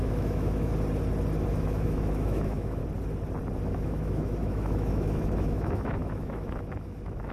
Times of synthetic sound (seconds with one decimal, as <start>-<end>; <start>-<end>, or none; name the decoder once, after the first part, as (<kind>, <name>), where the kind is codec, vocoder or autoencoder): 0.0-0.7 (autoencoder, DAC-VAE); 1.5-2.8; 3.7-7.3